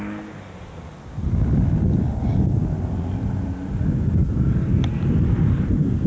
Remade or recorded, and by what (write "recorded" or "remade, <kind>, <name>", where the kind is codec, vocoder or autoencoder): recorded